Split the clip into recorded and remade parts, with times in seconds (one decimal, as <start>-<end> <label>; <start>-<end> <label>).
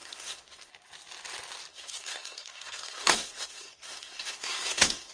0.0-0.7 remade; 0.7-1.7 recorded; 1.7-5.1 remade